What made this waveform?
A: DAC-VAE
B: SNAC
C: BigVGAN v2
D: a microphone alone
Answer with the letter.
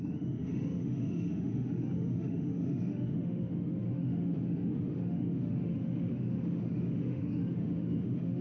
A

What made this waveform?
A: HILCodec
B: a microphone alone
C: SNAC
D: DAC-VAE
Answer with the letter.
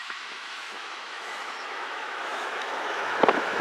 D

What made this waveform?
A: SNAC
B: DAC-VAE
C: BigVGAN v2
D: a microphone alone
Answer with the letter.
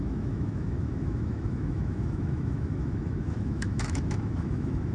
B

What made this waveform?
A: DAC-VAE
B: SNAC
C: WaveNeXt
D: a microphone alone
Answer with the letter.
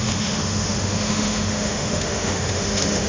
A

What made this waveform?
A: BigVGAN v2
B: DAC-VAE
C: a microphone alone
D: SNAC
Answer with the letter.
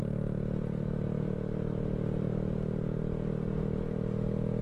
C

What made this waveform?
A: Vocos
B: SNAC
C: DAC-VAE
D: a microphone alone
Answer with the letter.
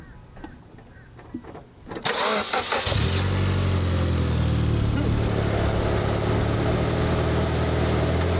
D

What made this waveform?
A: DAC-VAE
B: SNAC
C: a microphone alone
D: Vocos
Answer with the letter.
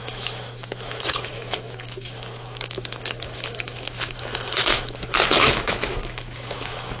A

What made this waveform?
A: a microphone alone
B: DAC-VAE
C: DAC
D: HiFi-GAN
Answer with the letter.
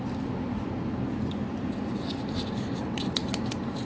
A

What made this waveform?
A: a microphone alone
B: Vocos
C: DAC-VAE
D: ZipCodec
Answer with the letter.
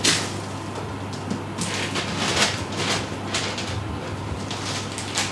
A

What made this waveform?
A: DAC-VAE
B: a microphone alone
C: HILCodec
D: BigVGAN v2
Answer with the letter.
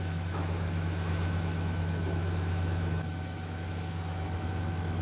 A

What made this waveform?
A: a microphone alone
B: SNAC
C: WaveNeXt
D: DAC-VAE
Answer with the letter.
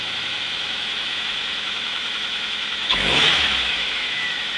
D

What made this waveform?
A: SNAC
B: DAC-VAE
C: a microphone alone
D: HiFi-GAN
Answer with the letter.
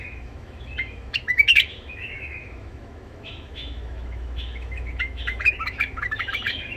B